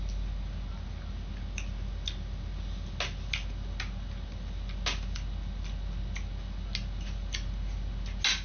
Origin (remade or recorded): recorded